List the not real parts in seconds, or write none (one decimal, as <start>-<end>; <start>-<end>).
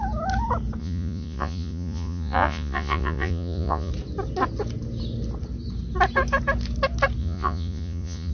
0.8-3.9; 7.2-8.3